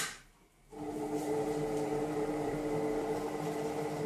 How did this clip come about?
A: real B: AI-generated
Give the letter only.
B